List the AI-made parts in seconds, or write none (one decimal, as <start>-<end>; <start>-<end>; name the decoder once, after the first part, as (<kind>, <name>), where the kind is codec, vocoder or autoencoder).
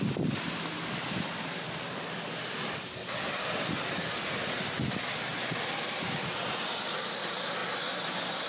none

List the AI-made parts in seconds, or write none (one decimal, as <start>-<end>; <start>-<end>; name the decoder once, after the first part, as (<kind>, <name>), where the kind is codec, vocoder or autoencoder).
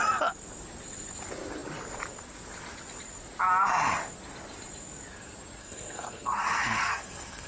5.6-7.5 (codec, SNAC)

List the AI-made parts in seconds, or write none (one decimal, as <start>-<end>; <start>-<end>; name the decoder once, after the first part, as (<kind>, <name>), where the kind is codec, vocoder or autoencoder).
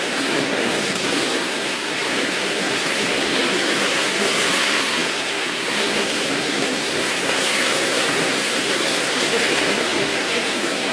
0.0-10.9 (codec, SNAC)